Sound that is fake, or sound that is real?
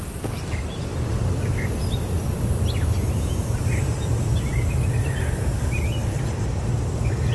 real